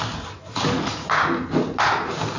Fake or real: real